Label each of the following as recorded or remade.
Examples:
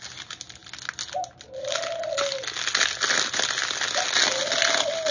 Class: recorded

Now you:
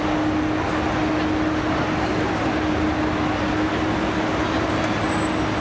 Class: recorded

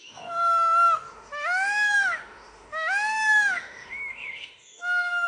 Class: remade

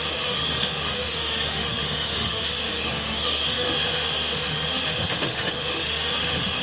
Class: remade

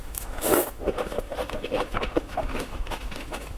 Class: remade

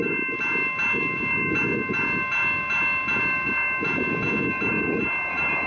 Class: recorded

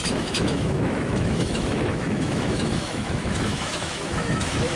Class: remade